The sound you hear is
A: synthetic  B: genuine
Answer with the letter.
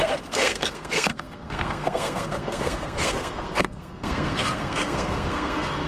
A